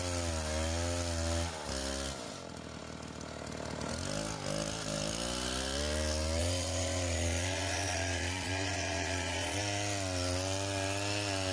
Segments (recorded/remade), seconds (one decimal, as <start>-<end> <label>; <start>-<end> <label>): 0.0-6.4 recorded; 6.4-9.6 remade; 9.6-11.5 recorded